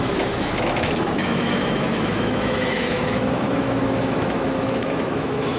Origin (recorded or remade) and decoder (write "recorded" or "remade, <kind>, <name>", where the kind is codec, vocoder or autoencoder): remade, autoencoder, DAC-VAE